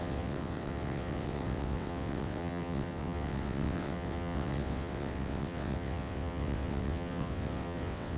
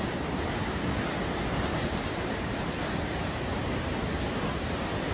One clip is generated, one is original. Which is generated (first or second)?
first